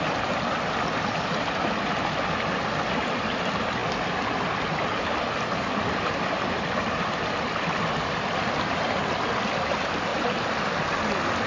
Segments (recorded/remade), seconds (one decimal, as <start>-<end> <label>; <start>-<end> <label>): 0.0-11.5 recorded